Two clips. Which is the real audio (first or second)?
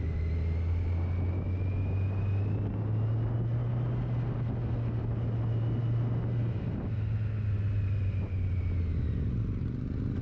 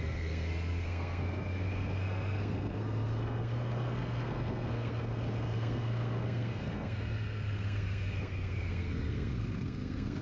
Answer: first